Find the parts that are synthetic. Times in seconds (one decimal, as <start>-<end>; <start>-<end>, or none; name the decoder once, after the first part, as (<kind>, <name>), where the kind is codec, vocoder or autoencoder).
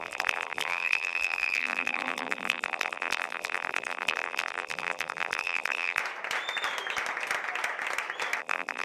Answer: 0.0-6.0 (vocoder, BigVGAN v2); 8.4-8.8